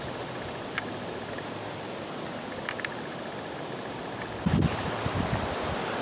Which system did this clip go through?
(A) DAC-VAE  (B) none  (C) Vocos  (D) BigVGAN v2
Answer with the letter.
B